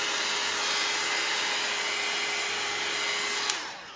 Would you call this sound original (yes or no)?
yes